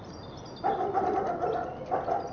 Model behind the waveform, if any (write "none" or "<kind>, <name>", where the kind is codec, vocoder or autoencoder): none